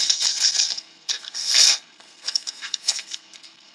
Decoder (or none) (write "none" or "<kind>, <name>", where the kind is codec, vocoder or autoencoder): codec, SNAC